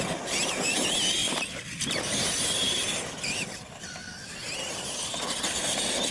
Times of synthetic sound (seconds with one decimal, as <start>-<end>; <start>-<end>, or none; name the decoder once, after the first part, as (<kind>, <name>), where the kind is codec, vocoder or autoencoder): 1.2-3.9 (vocoder, BigVGAN v2)